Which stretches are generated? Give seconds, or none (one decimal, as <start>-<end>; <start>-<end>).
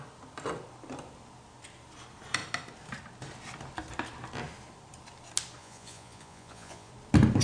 5.6-6.9